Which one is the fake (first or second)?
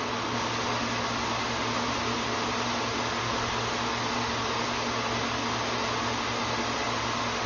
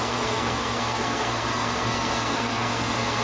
second